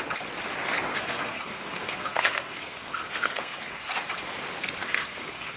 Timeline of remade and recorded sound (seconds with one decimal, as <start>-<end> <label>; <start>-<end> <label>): 0.0-0.9 recorded; 0.9-3.8 remade; 3.8-4.8 recorded; 4.8-5.6 remade